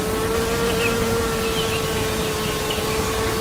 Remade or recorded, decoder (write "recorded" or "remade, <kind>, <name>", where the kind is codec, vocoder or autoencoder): recorded